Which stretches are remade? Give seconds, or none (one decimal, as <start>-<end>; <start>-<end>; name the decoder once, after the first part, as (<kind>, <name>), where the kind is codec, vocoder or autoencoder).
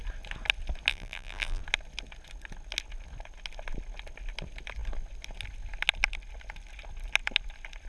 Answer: 0.9-1.6 (vocoder, BigVGAN v2)